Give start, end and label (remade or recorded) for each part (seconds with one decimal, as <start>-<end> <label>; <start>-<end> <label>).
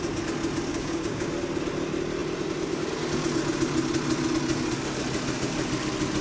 0.0-0.7 recorded; 0.7-1.3 remade; 1.3-6.2 recorded